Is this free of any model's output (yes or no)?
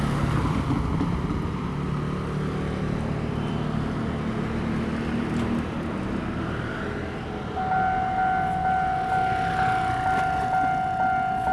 yes